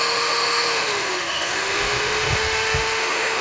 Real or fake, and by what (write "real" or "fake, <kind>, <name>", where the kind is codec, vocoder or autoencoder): fake, autoencoder, DAC-VAE